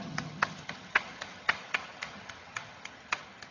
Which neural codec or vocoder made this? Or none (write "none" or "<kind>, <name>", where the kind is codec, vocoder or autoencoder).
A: vocoder, HiFi-GAN